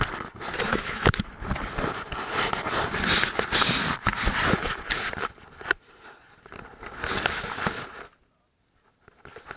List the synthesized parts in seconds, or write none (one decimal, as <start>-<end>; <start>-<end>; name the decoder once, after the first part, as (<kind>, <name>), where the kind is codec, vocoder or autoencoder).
0.7-1.3 (autoencoder, DAC-VAE)